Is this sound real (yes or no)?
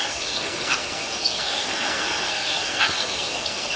no